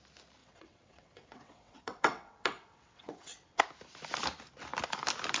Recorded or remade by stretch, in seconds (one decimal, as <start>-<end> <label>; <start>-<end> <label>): 0.0-0.4 recorded; 0.4-3.6 remade; 3.6-5.4 recorded